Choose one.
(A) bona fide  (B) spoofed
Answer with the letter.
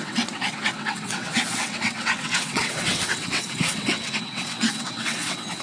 B